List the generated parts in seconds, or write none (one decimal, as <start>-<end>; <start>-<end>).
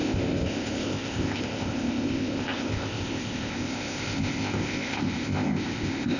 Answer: 0.0-6.2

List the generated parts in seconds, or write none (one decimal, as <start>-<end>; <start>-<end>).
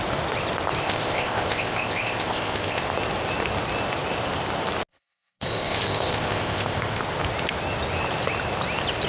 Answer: 0.8-2.8; 4.9-7.0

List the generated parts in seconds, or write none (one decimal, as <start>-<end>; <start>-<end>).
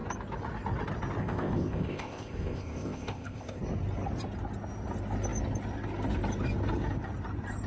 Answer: 1.2-3.6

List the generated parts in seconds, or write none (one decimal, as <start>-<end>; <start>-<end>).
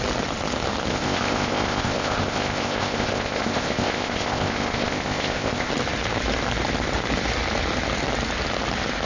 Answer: 0.9-5.7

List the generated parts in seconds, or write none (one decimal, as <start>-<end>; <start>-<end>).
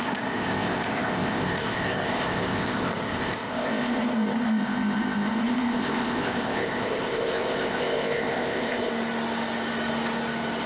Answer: 0.0-8.9